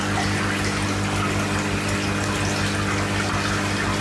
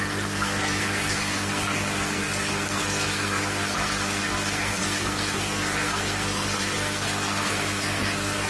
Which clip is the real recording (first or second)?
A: first